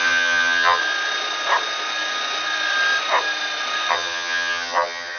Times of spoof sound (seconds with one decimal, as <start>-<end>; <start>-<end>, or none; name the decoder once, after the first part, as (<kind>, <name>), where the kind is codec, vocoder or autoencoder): 0.0-0.8 (vocoder, HiFi-GAN); 3.9-5.2